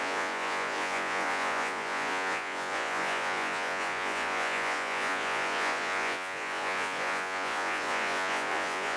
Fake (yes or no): yes